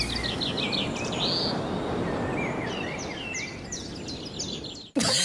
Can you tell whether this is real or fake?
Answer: real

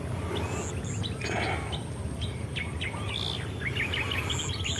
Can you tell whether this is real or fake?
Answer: real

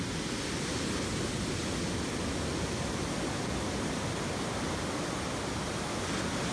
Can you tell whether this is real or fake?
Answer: real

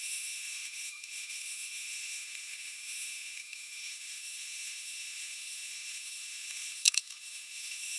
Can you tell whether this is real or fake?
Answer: fake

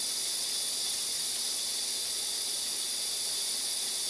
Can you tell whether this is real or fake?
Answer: real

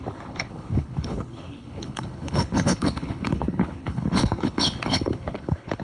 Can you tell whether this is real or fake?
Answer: fake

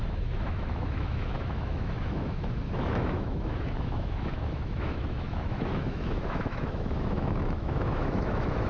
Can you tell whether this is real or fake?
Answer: fake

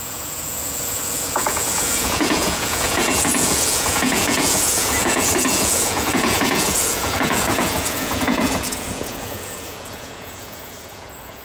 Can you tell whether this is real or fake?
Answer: fake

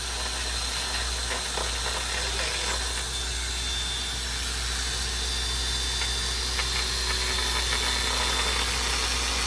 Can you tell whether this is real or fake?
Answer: real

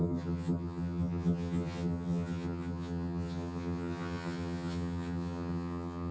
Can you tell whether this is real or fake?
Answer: fake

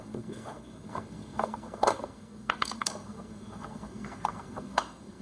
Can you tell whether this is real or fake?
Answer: fake